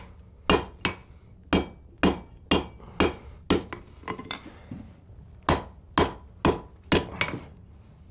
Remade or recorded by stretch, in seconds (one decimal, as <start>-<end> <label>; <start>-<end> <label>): 0.0-8.1 recorded